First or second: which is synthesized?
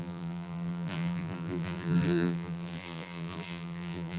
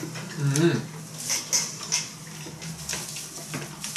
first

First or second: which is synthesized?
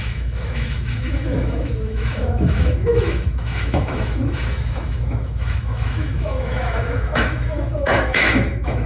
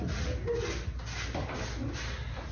first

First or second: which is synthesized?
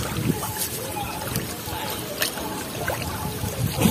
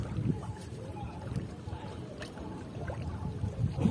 second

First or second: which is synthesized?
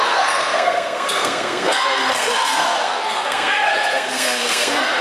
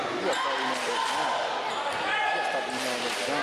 first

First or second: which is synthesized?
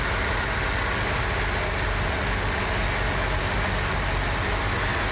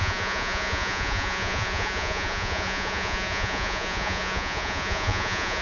second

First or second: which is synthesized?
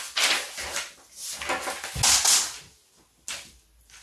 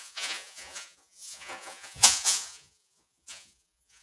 second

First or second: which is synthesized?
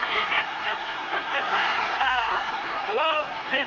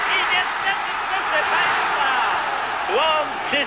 first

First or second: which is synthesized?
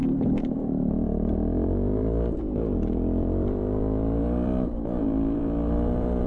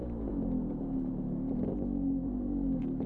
first